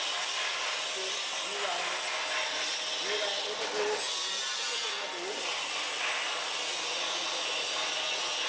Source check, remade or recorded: recorded